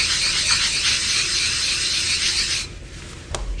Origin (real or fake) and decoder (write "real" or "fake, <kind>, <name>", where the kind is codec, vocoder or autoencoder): real